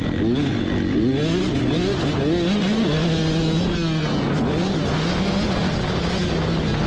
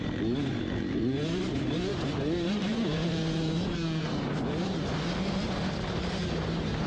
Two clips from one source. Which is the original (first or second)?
first